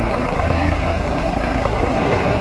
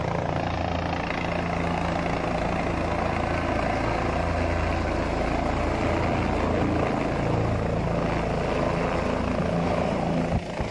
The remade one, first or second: first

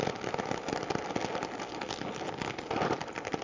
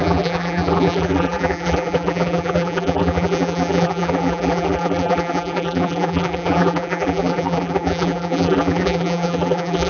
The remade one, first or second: second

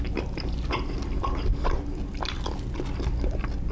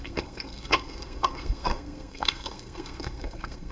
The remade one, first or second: second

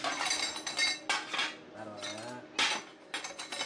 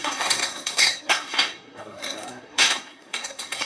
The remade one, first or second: second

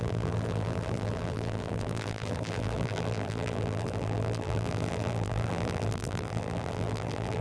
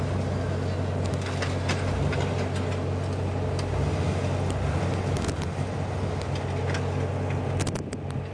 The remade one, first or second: first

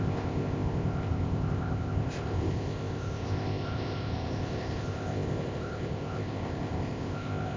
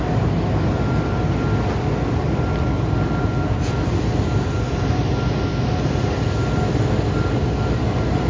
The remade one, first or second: first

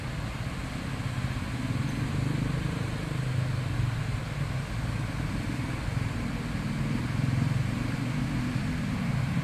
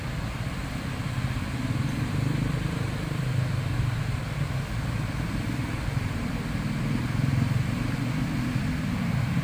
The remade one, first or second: second